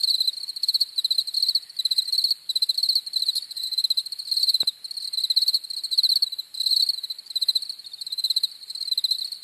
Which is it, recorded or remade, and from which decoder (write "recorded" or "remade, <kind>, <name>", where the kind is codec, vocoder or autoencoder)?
remade, vocoder, BigVGAN v2